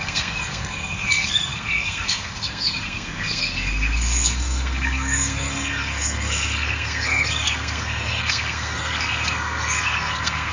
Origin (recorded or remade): remade